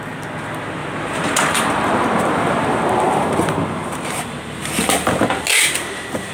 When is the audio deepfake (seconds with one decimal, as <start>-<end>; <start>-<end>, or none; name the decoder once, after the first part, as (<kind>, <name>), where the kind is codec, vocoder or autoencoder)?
0.8-4.1 (vocoder, BigVGAN v2)